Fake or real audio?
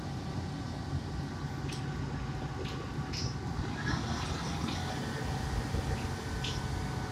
real